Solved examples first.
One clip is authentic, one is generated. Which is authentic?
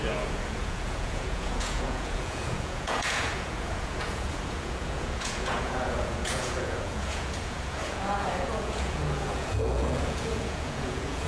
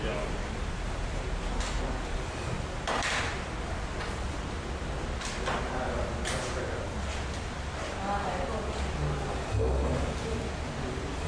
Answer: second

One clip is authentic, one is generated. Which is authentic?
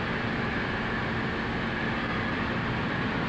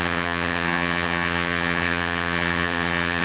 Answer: first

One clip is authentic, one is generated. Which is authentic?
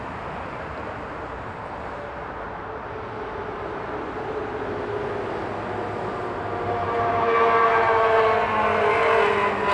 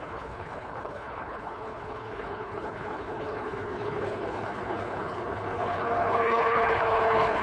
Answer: first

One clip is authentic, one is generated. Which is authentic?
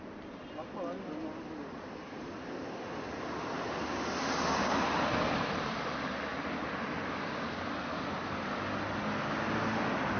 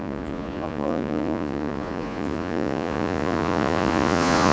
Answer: first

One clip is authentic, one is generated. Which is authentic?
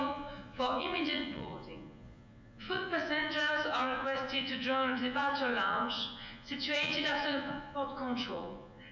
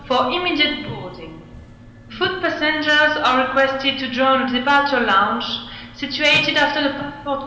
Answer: second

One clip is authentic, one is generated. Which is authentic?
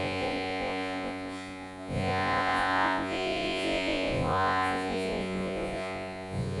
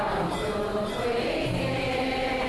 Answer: second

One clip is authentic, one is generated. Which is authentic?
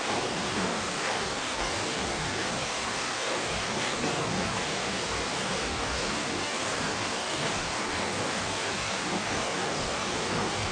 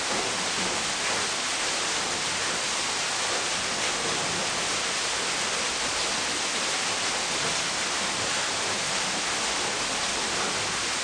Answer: second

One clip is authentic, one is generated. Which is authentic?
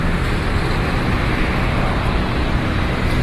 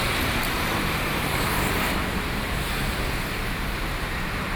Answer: first